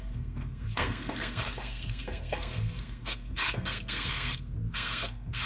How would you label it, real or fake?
fake